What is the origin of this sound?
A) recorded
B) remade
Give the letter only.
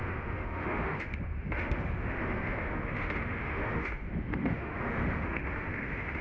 B